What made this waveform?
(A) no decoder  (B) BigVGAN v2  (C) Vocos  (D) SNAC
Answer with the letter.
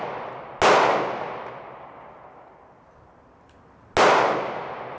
A